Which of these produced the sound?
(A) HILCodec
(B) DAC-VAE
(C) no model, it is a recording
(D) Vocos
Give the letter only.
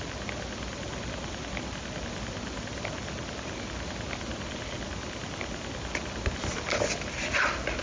C